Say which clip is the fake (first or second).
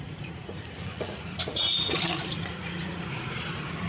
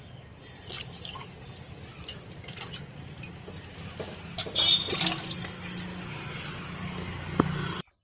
first